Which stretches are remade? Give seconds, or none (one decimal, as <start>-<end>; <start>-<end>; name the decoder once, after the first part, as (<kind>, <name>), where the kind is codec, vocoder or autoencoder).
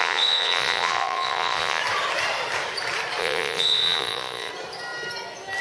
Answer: 0.0-1.8 (vocoder, Vocos); 3.2-4.5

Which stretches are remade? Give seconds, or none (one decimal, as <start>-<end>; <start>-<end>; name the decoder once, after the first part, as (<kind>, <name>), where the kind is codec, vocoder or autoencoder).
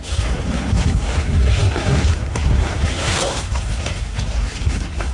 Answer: 0.0-5.1 (codec, SNAC)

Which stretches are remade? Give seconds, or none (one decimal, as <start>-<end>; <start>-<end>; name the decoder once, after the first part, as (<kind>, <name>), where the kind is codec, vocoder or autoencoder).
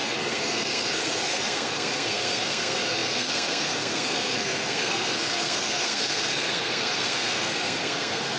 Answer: 0.0-8.4 (codec, SNAC)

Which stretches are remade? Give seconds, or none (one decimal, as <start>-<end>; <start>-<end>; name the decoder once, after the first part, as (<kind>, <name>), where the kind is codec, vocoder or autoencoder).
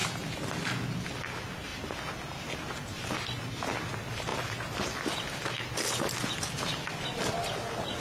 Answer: none